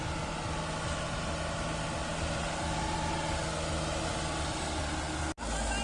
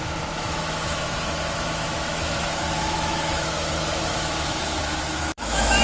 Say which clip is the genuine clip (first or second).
first